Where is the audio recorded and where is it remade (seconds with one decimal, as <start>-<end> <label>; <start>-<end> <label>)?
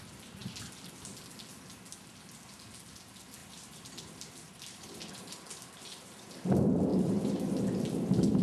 0.0-3.4 recorded; 3.4-6.3 remade; 6.3-6.9 recorded; 6.9-7.6 remade; 7.6-8.4 recorded